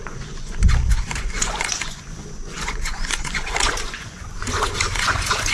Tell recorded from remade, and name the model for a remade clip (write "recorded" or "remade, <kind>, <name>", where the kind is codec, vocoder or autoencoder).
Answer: remade, vocoder, Vocos